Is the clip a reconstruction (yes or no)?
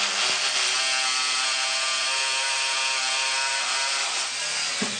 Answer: no